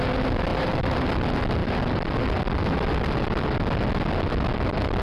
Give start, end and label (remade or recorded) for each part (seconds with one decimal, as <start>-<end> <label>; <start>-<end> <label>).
0.0-0.5 recorded; 0.5-1.0 remade; 1.0-1.6 recorded; 1.6-3.4 remade; 3.4-5.0 recorded